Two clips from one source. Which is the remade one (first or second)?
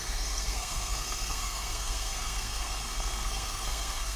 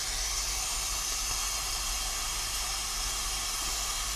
first